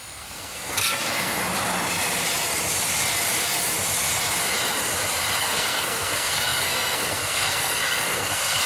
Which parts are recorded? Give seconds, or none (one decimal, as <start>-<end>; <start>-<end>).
1.4-5.4